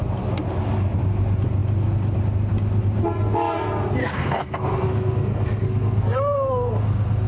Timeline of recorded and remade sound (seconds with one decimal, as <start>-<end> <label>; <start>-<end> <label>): 0.0-4.0 recorded; 4.0-7.3 remade